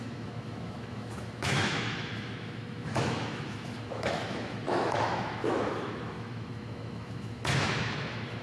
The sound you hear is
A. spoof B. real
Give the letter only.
A